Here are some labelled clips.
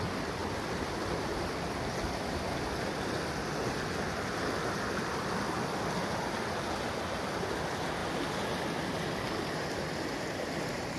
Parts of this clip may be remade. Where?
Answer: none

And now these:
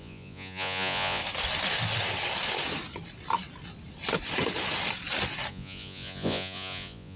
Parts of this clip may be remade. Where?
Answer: 0.0-1.2 (vocoder, Vocos); 5.5-7.2

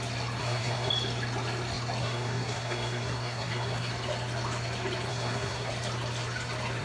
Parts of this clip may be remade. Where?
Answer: 0.4-0.9 (codec, SNAC); 2.0-3.9; 5.1-5.7

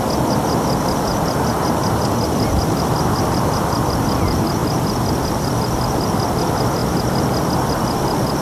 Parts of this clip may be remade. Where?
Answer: 1.1-3.8 (vocoder, BigVGAN v2); 4.6-5.5; 6.8-7.5

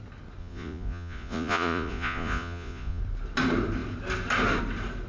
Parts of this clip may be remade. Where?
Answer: 0.4-3.0 (vocoder, Vocos)